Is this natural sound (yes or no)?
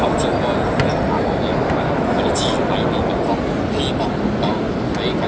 yes